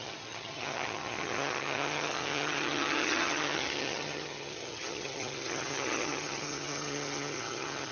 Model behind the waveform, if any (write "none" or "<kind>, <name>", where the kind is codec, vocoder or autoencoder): vocoder, HiFi-GAN